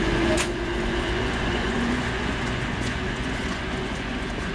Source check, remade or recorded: remade